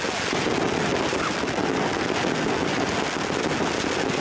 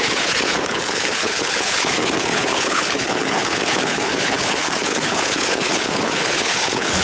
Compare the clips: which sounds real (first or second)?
first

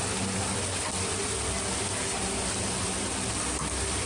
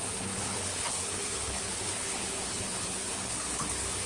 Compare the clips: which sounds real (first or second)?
first